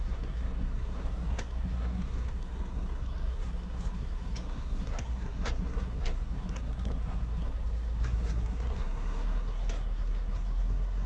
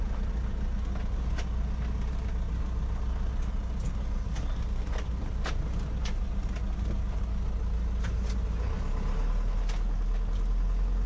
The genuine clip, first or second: second